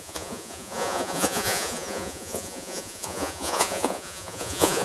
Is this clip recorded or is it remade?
remade